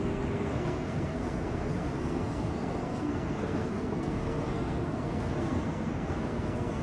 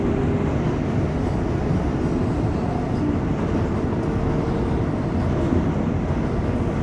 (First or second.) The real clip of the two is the second